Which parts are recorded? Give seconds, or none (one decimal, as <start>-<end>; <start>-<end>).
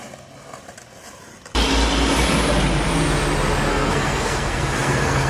0.0-3.7